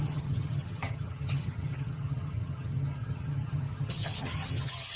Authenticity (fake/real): fake